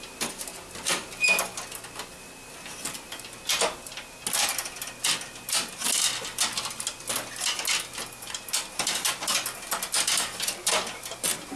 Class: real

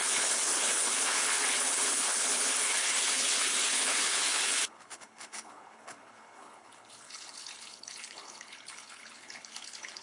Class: fake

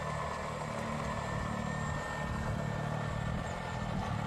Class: real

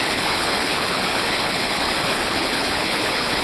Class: fake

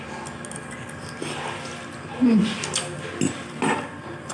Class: real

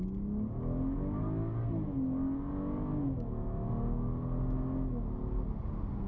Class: real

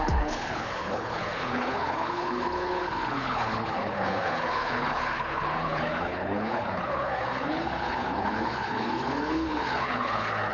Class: fake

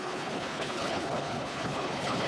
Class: fake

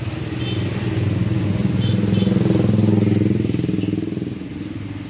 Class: real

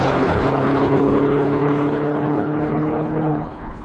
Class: fake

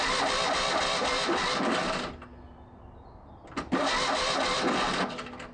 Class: real